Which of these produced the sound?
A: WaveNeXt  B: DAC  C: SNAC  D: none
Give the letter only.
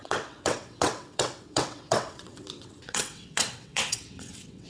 A